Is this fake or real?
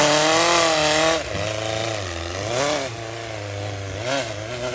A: real